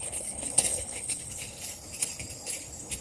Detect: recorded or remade remade